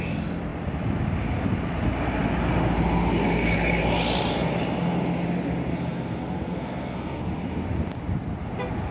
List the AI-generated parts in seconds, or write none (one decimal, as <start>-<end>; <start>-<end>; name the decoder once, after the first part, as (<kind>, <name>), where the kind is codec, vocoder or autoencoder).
5.7-7.2 (codec, SNAC)